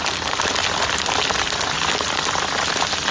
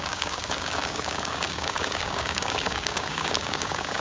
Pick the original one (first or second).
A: first